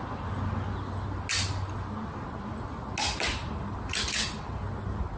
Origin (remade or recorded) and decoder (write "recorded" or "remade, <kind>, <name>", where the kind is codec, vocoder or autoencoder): recorded